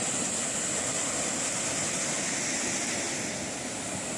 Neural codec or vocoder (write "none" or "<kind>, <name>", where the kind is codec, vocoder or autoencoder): none